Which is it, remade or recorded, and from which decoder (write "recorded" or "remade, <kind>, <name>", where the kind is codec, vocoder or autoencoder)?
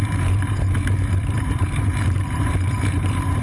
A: remade, vocoder, BigVGAN v2